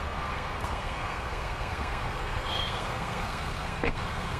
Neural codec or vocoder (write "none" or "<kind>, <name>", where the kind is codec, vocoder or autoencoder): codec, SNAC